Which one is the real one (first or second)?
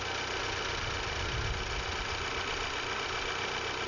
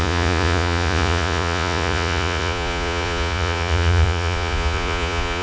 first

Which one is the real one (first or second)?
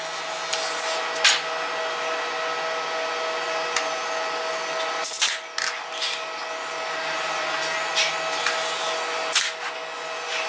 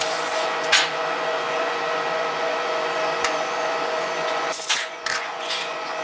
first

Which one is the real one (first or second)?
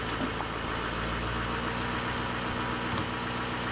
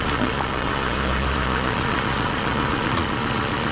first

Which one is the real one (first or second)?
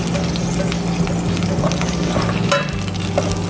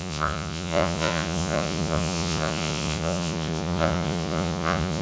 first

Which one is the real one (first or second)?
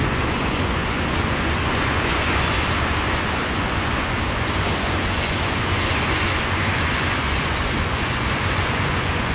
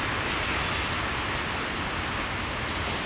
second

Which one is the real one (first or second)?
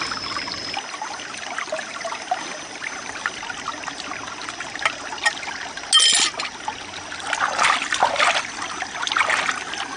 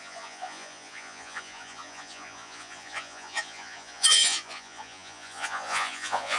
first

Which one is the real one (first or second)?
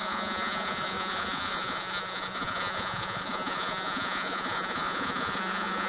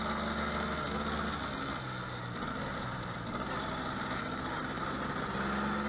second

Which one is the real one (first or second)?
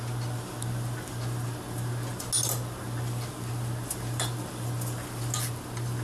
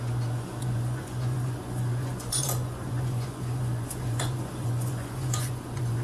first